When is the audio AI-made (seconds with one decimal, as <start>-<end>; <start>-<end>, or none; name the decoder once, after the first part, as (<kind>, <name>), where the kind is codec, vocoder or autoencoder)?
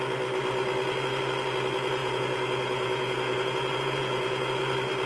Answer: 2.0-4.6 (vocoder, Vocos)